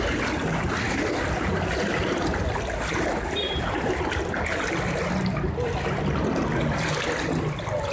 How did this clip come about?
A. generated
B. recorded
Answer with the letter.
B